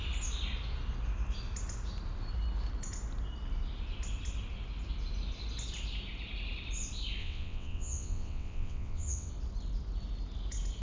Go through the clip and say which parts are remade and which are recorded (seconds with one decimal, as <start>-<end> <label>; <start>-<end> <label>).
0.0-7.2 recorded; 7.2-9.3 remade; 9.3-10.8 recorded